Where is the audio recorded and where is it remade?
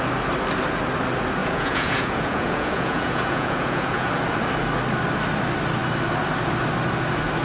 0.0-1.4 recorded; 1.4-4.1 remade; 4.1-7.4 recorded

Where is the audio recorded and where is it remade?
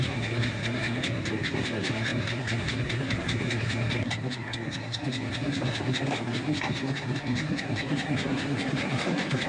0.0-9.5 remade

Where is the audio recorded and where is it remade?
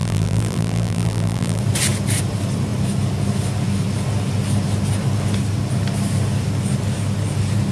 0.0-1.6 remade; 1.6-7.7 recorded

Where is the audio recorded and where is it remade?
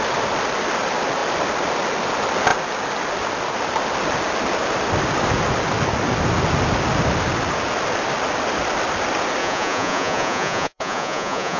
0.0-9.4 recorded; 9.4-11.6 remade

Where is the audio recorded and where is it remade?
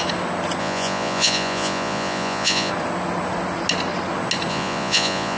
0.0-0.6 recorded; 0.6-2.7 remade; 2.7-4.5 recorded; 4.5-5.4 remade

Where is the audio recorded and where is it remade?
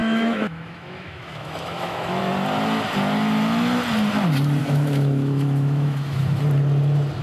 0.0-2.2 remade; 2.2-4.6 recorded; 4.6-6.4 remade; 6.4-7.2 recorded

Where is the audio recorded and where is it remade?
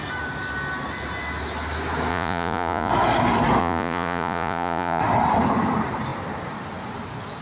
0.0-2.1 recorded; 2.1-2.9 remade; 2.9-3.6 recorded; 3.6-5.0 remade; 5.0-7.4 recorded